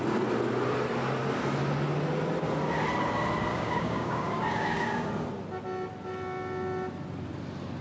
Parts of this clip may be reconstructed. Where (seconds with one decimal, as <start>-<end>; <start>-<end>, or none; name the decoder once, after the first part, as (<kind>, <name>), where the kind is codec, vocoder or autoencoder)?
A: 3.5-5.1 (codec, DAC)